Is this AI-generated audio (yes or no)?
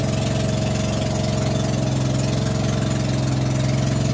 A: no